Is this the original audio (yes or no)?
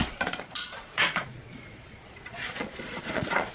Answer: no